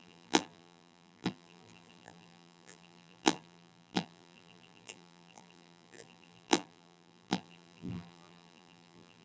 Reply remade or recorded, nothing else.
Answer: remade